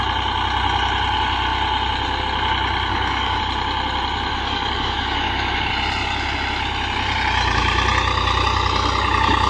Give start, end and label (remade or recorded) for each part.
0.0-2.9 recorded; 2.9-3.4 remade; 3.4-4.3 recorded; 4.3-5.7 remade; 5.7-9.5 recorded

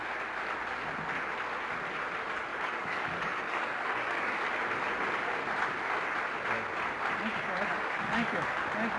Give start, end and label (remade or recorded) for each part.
0.0-2.5 recorded; 2.5-4.5 remade; 4.5-7.7 recorded; 7.7-8.5 remade; 8.5-9.0 recorded

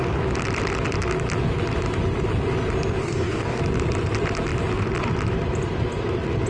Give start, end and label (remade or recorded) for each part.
0.0-3.0 recorded; 3.0-3.6 remade; 3.6-6.5 recorded

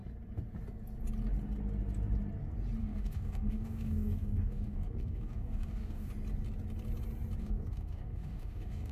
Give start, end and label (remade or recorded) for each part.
0.0-2.8 recorded; 2.8-6.1 remade; 6.1-7.4 recorded; 7.4-8.9 remade

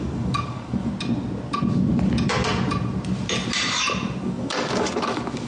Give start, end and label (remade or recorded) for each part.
0.0-0.9 remade; 0.9-4.2 recorded; 4.2-5.5 remade